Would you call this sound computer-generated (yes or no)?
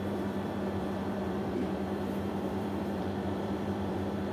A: yes